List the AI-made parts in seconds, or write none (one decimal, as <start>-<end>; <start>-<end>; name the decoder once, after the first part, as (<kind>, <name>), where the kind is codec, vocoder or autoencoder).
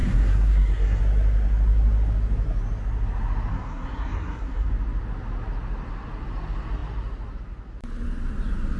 0.0-1.0 (codec, SNAC); 3.5-4.7